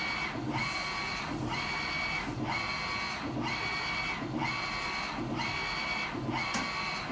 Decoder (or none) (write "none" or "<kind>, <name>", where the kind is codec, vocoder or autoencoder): none